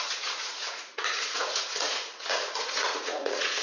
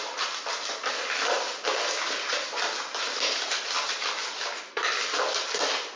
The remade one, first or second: first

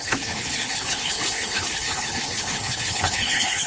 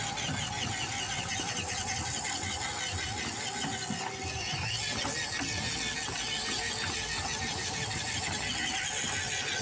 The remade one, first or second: first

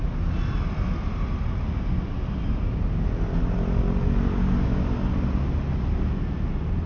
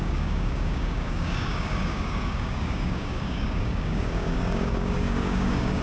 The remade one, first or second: second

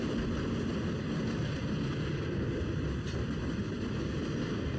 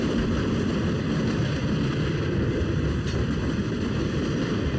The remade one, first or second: second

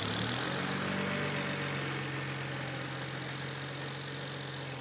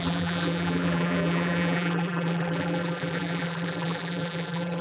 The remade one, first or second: second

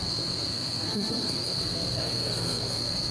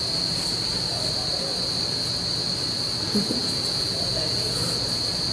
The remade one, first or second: first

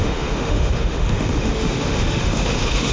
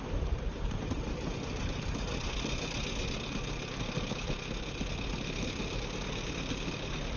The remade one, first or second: first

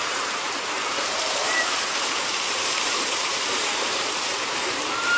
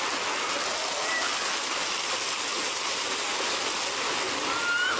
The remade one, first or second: first